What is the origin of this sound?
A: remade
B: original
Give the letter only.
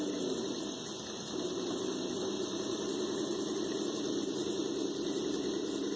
B